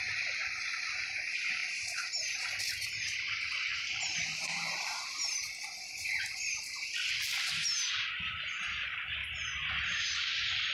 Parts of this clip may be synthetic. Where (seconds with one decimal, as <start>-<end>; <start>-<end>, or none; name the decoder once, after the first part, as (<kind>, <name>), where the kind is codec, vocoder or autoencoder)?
0.0-9.2 (vocoder, BigVGAN v2); 10.0-10.7